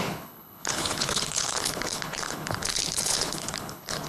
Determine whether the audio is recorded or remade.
remade